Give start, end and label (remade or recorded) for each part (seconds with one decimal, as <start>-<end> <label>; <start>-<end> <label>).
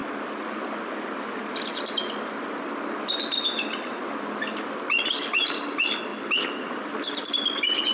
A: 0.0-7.9 recorded